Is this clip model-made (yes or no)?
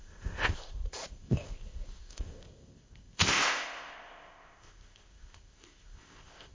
yes